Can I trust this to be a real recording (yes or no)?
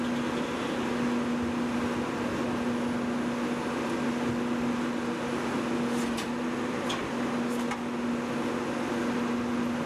yes